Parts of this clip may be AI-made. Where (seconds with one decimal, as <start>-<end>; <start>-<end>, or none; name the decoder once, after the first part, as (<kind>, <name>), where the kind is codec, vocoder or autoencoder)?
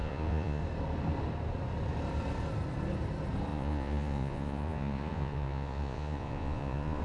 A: 0.0-0.6 (vocoder, Vocos); 3.5-7.0